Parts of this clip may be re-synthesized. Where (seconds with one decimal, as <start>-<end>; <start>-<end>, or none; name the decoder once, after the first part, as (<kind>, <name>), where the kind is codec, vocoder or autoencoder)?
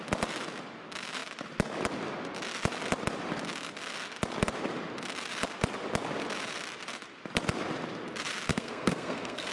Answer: 8.5-9.5 (codec, SNAC)